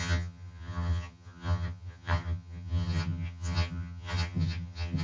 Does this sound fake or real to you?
fake